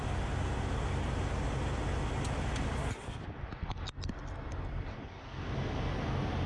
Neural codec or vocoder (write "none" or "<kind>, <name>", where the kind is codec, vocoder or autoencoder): none